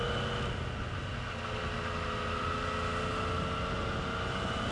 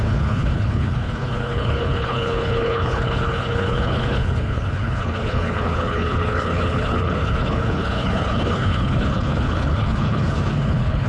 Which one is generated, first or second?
second